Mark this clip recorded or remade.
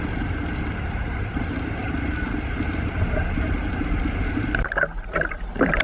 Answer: recorded